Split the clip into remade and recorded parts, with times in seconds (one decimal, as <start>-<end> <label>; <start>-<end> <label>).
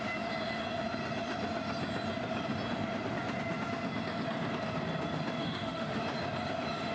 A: 0.0-5.4 recorded; 5.4-6.0 remade; 6.0-6.9 recorded